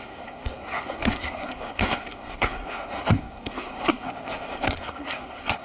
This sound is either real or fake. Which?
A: fake